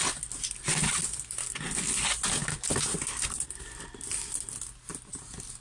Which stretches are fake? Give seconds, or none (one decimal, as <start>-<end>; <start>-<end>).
2.4-4.5